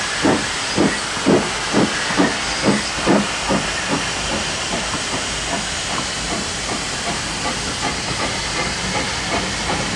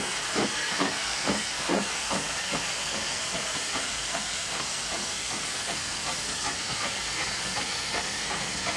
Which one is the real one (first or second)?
first